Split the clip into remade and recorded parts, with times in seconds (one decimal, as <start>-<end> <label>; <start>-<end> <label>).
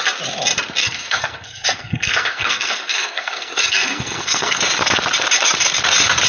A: 0.0-0.8 recorded; 0.8-4.6 remade; 4.6-6.3 recorded